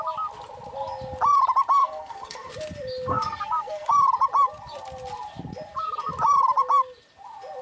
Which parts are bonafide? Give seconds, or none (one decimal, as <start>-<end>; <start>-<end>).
0.0-1.8; 2.5-3.1; 3.9-7.6